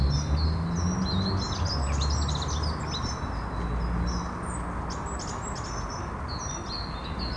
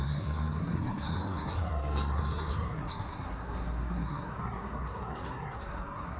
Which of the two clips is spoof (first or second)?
second